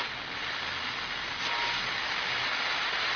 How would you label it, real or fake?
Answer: real